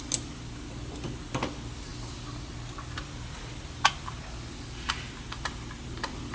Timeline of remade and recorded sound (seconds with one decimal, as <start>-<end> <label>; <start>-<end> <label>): 0.0-6.3 recorded